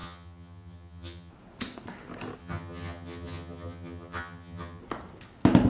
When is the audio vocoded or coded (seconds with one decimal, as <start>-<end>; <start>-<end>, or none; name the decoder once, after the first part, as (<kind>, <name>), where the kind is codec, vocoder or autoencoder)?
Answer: 0.0-1.3 (vocoder, HiFi-GAN); 2.4-4.8